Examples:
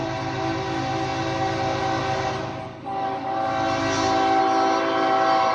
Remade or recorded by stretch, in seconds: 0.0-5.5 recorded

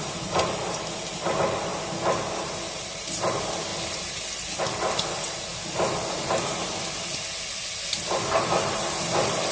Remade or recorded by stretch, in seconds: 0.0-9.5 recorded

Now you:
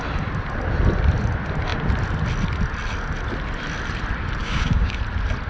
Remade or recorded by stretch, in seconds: 0.0-4.4 recorded; 4.4-5.0 remade; 5.0-5.5 recorded

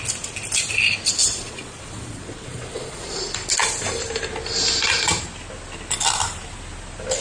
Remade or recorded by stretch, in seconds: 0.0-1.2 recorded; 1.2-3.2 remade; 3.2-7.2 recorded

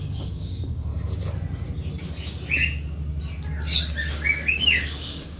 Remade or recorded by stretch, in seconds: 0.0-0.9 remade; 0.9-4.1 recorded; 4.1-5.4 remade

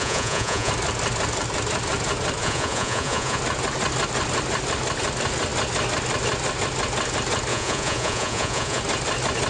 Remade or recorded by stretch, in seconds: 0.0-0.7 remade; 0.7-2.4 recorded; 2.4-3.4 remade; 3.4-7.5 recorded; 7.5-8.8 remade; 8.8-9.5 recorded

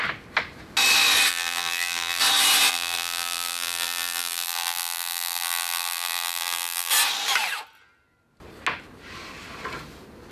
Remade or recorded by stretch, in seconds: 0.0-1.3 recorded; 1.3-2.2 remade; 2.2-2.7 recorded; 2.7-6.9 remade; 6.9-10.3 recorded

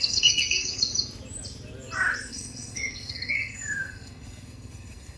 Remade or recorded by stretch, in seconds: 0.0-0.9 remade; 0.9-2.3 recorded; 2.3-5.2 remade